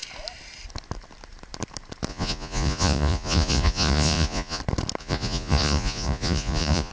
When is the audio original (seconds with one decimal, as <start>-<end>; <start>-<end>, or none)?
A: 0.0-2.1; 4.6-5.0